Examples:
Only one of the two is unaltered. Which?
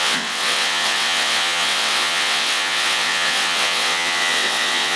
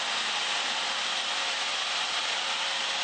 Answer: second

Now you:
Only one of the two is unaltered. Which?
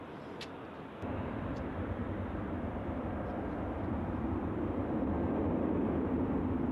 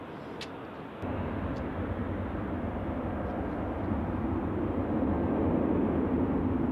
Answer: second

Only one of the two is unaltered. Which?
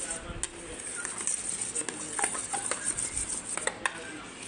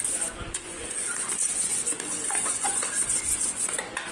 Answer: first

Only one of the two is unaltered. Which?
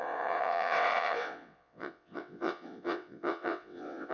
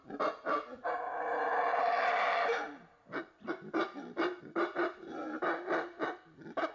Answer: second